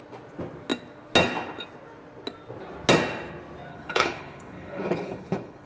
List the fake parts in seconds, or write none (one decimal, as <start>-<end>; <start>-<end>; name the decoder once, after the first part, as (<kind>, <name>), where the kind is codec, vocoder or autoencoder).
3.7-5.7 (codec, HILCodec)